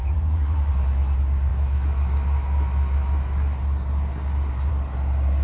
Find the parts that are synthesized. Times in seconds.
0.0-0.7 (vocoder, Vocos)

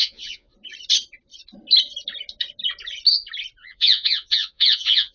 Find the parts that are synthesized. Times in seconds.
0.0-0.5 (vocoder, Vocos); 3.6-5.1

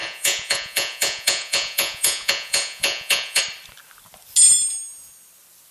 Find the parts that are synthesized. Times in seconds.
0.0-3.4 (vocoder, Vocos)

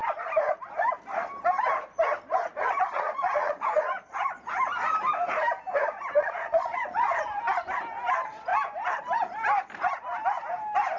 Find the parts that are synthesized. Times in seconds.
2.5-4.5 (vocoder, Vocos); 6.1-7.2

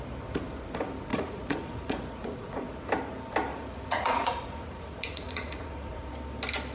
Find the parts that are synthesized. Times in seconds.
1.1-2.7 (vocoder, Vocos); 3.5-6.1